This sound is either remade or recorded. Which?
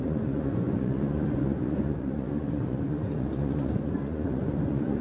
remade